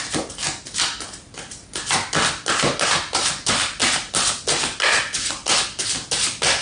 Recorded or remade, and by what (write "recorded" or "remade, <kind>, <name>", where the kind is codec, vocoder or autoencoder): recorded